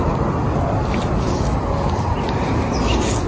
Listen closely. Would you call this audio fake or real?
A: real